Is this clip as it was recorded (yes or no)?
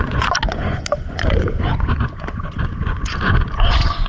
no